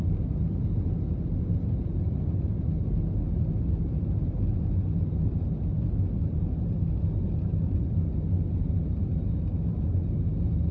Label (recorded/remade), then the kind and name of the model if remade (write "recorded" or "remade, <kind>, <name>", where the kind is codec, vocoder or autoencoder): recorded